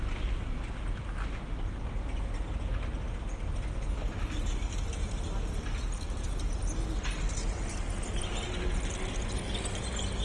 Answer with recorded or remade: recorded